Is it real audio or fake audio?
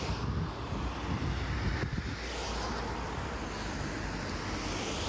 real